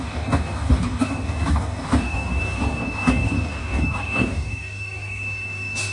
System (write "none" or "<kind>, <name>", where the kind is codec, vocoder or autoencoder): codec, DAC